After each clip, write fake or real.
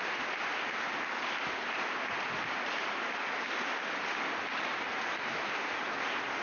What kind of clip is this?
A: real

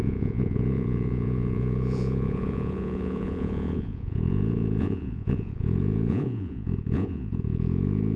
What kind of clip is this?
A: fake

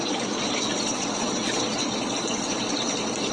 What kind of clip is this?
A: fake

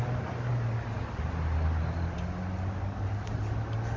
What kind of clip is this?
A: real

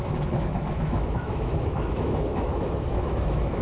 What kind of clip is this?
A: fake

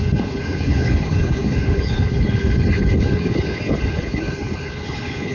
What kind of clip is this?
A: fake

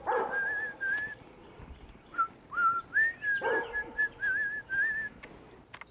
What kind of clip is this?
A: real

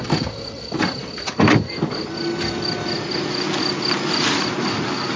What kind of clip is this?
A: real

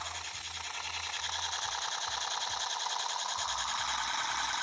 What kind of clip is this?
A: real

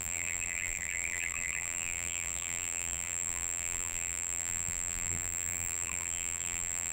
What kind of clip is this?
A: fake